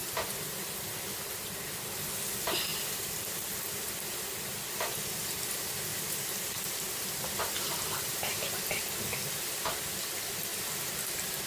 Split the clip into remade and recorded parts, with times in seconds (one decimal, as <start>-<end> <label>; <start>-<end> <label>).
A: 0.0-5.9 recorded; 5.9-7.4 remade; 7.4-10.5 recorded; 10.5-11.5 remade